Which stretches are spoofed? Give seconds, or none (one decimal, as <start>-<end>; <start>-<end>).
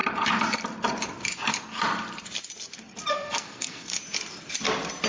3.1-3.9